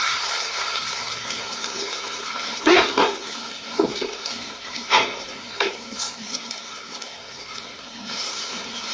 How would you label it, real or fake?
fake